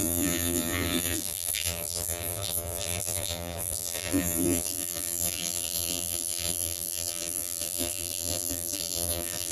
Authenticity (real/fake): fake